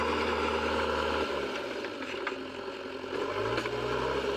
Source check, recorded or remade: recorded